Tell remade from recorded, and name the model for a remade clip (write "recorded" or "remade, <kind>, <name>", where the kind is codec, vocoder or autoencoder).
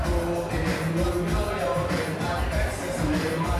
recorded